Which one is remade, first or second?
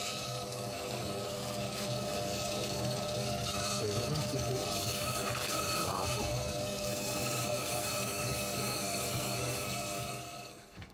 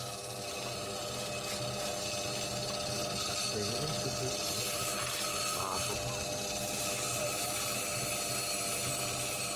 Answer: first